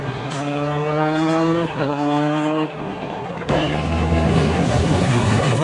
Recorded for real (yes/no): no